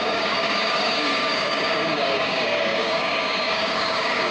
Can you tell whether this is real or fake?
fake